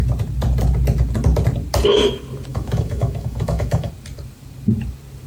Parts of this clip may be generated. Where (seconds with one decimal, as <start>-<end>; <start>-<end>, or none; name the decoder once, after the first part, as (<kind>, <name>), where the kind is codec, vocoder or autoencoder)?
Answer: 2.5-3.9 (autoencoder, DAC-VAE)